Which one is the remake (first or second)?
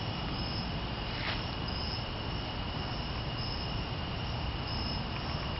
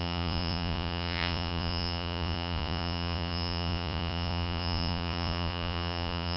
second